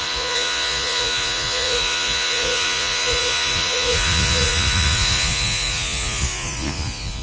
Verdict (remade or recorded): remade